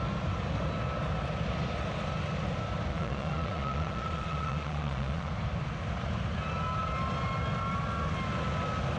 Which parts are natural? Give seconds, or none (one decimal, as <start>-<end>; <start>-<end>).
0.0-2.9; 5.3-9.0